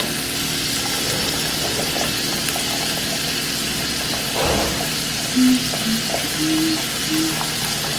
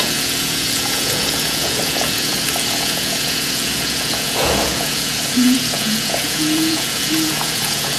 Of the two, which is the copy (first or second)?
second